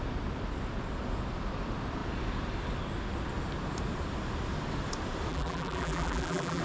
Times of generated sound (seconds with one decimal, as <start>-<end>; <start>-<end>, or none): 5.3-6.6